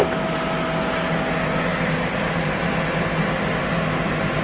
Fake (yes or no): no